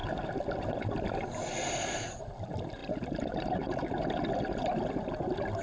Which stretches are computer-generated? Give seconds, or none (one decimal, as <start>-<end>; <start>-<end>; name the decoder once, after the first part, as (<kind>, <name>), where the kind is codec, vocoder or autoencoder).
none